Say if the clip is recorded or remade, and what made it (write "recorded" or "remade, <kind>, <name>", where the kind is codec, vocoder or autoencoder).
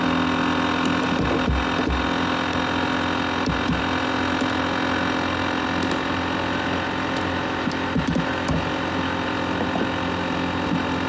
recorded